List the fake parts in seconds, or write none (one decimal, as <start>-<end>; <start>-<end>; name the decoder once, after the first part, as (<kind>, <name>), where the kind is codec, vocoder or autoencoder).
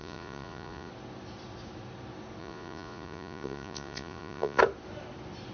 0.0-0.9 (vocoder, Vocos); 2.4-4.6